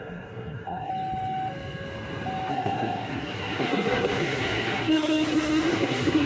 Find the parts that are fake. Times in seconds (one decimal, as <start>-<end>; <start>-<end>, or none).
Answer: 0.0-0.9; 2.5-6.3